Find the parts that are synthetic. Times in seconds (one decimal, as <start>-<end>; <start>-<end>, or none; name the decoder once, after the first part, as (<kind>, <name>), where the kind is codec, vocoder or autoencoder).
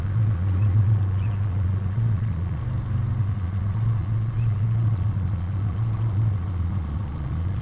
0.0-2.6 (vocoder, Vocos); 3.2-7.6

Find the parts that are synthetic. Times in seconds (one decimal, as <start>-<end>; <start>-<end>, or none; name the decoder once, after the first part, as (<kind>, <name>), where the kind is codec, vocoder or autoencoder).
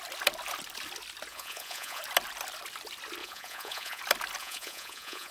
1.3-2.0 (vocoder, Vocos); 3.2-4.0; 4.4-5.3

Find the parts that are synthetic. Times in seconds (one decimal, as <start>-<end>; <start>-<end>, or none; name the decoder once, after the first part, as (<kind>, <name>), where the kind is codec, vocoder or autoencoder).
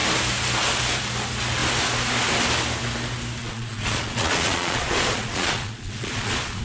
3.4-6.6 (vocoder, Vocos)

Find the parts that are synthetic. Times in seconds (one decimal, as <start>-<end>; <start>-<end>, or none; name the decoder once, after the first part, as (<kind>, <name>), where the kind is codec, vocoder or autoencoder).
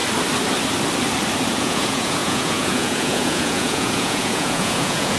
1.6-5.2 (vocoder, Vocos)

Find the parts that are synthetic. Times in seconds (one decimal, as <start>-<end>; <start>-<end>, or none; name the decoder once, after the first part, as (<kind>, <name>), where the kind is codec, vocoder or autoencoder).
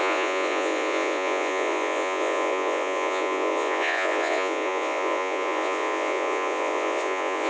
0.0-7.5 (vocoder, Vocos)